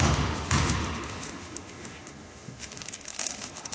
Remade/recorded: remade